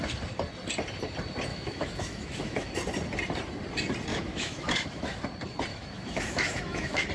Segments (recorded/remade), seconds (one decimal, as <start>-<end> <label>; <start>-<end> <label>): 0.0-1.5 recorded; 1.5-2.7 remade; 2.7-4.1 recorded; 4.1-5.2 remade; 5.2-5.7 recorded; 5.7-7.1 remade

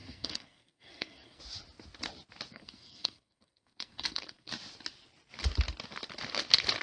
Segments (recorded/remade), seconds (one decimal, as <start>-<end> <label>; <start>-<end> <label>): 0.0-1.4 remade; 1.4-2.5 recorded; 2.5-4.5 remade; 4.5-6.8 recorded

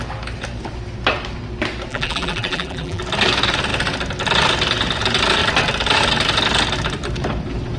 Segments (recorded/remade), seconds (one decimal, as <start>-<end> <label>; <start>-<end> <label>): 0.0-1.9 recorded; 1.9-3.0 remade; 3.0-7.8 recorded

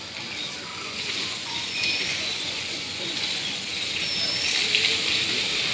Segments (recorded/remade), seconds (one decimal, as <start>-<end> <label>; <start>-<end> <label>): 0.0-0.7 recorded; 0.7-4.0 remade; 4.0-5.7 recorded

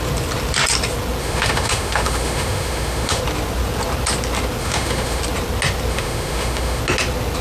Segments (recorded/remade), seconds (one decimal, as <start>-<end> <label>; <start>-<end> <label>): 0.0-1.2 recorded; 1.2-3.2 remade; 3.2-4.6 recorded; 4.6-5.2 remade; 5.2-5.9 recorded; 5.9-6.8 remade; 6.8-7.4 recorded

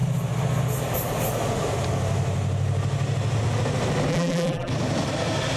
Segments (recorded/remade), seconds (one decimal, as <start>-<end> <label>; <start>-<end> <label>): 0.0-4.1 recorded; 4.1-4.7 remade; 4.7-5.6 recorded